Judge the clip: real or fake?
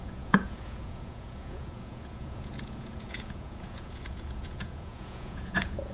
fake